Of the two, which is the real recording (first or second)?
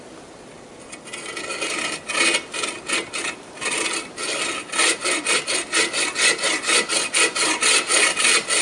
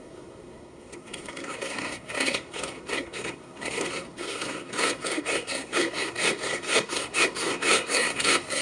first